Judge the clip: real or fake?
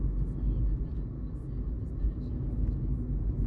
real